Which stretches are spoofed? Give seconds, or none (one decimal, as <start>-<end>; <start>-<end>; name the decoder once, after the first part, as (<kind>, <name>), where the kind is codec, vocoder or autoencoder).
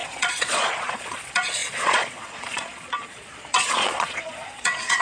0.0-5.0 (vocoder, Vocos)